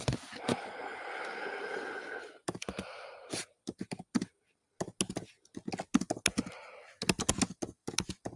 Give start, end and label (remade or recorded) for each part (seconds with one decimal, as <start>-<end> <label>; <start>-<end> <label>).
0.0-8.4 recorded